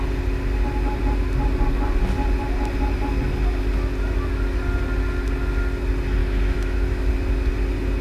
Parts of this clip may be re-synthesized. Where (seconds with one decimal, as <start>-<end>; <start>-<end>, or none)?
6.2-7.1